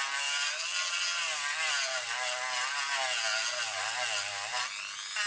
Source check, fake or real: real